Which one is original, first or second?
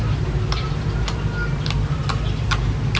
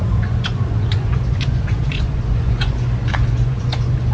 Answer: first